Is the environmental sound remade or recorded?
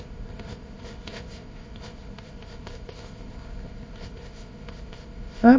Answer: remade